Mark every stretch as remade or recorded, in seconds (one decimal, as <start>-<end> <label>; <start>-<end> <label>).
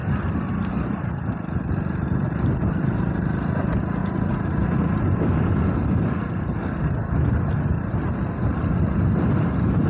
0.0-9.9 recorded